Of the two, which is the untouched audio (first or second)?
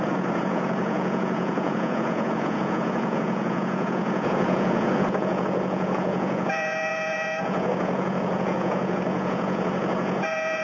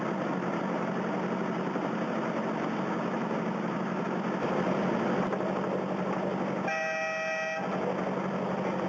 second